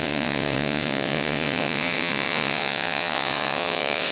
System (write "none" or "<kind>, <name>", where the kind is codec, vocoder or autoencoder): vocoder, WaveNeXt